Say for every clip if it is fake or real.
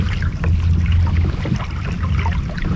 real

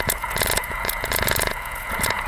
fake